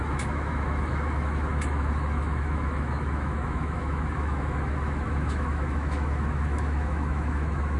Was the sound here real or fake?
fake